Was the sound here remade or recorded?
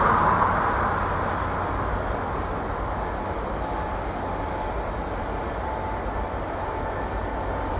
recorded